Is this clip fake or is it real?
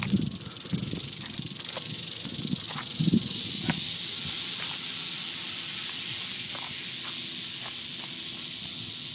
real